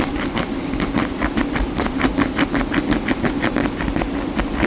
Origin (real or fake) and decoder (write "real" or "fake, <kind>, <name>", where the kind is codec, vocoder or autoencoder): real